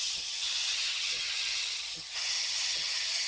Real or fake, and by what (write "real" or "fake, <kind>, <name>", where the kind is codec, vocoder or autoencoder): fake, vocoder, HiFi-GAN